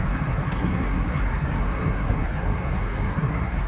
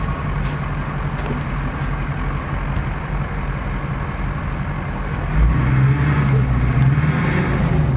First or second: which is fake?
first